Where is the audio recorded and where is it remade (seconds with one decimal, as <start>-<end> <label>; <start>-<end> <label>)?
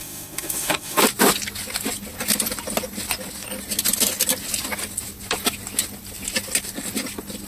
0.0-1.0 remade; 1.0-7.5 recorded